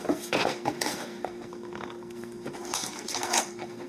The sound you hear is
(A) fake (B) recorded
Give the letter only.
A